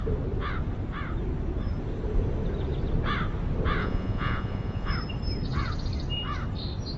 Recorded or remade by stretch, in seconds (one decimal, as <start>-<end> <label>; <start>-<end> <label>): 0.0-3.8 recorded; 3.8-4.9 remade; 4.9-7.0 recorded